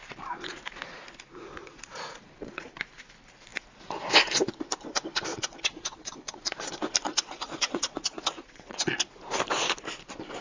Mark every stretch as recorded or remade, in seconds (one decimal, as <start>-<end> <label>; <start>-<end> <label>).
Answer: 0.0-1.6 recorded; 1.6-2.7 remade; 2.7-5.3 recorded; 5.3-6.3 remade; 6.3-7.1 recorded; 7.1-9.1 remade; 9.1-10.4 recorded

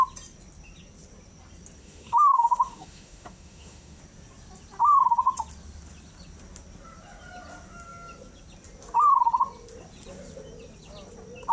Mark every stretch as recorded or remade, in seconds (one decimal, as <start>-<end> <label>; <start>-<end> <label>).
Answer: 0.0-1.8 recorded; 1.8-4.0 remade; 4.0-11.5 recorded

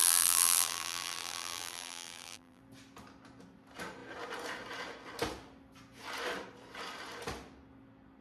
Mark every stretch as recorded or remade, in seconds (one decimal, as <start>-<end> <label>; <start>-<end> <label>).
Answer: 0.0-2.6 remade; 2.6-8.2 recorded

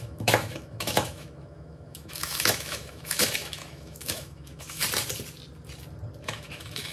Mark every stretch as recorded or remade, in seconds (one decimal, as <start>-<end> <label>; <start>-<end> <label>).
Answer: 0.0-4.8 remade; 4.8-6.2 recorded; 6.2-6.9 remade

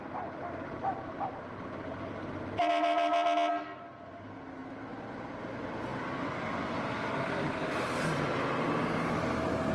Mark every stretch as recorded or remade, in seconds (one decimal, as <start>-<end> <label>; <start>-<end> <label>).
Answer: 0.0-2.1 remade; 2.1-9.7 recorded

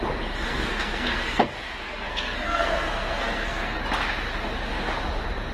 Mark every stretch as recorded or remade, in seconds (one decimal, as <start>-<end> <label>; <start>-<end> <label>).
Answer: 0.0-0.5 recorded; 0.5-3.8 remade; 3.8-5.5 recorded